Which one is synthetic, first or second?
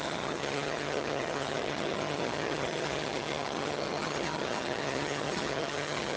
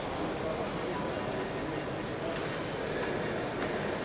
first